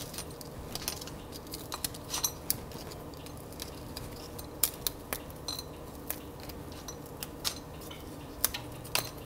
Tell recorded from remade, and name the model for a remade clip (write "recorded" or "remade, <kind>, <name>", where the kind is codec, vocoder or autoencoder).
recorded